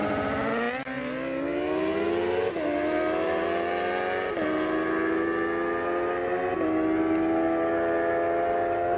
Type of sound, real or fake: real